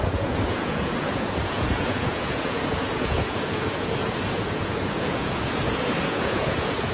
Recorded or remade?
remade